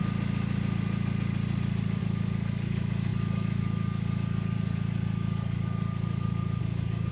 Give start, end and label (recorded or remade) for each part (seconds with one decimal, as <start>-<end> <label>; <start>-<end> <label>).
0.0-2.0 recorded; 2.0-7.1 remade